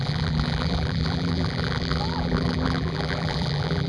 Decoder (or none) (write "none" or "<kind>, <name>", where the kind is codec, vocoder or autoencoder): vocoder, BigVGAN v2